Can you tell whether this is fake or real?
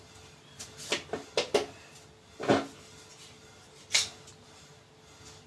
real